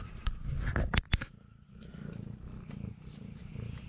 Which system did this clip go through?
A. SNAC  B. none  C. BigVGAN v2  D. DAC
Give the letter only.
B